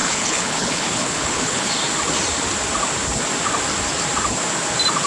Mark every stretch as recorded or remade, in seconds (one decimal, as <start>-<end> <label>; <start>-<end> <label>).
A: 0.0-1.7 remade; 1.7-5.1 recorded